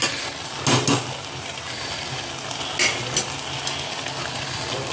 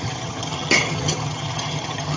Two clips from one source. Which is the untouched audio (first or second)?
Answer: first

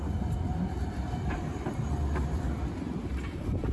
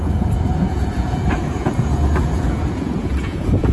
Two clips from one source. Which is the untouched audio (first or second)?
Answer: first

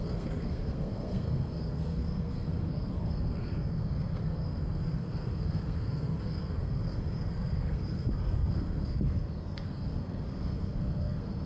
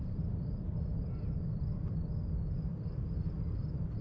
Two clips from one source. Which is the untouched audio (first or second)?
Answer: second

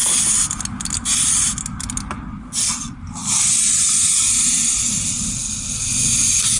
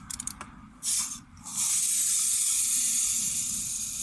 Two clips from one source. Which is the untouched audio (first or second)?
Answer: first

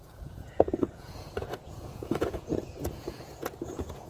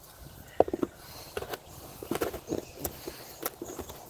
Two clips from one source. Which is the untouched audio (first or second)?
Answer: second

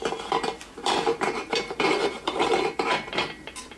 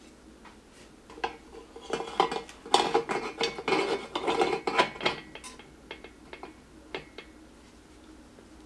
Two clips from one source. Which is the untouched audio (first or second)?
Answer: second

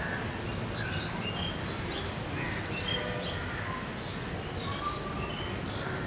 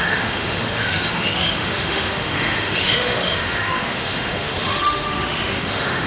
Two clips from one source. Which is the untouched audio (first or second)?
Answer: first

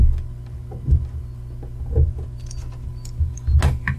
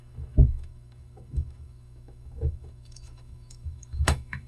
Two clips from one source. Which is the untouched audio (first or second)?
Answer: first